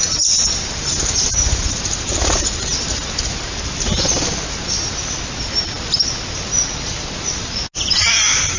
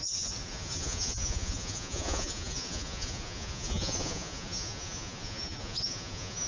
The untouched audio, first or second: first